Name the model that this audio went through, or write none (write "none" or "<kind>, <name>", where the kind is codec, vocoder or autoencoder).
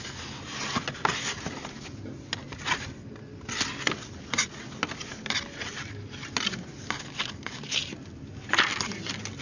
none